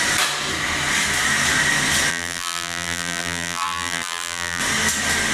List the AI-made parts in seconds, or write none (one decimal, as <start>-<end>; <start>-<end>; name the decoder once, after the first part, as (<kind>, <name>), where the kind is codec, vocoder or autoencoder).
2.1-4.6 (vocoder, BigVGAN v2)